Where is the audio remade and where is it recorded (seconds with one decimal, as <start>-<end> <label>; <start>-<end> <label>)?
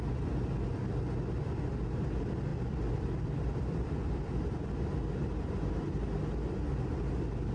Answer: 0.0-2.5 recorded; 2.5-4.7 remade; 4.7-7.5 recorded